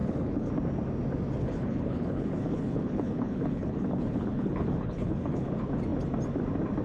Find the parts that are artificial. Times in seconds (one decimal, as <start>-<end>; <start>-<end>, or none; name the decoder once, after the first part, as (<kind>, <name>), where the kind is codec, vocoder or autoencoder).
0.0-0.5 (codec, HILCodec); 1.4-5.5